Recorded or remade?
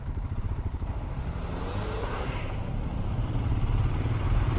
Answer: remade